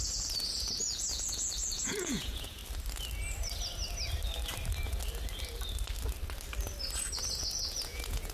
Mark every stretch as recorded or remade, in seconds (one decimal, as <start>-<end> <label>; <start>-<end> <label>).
0.0-2.6 remade; 2.6-7.4 recorded; 7.4-8.3 remade